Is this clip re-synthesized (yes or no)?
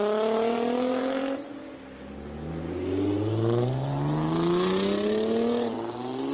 no